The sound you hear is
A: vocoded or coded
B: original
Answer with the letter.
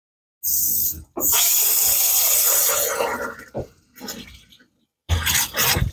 B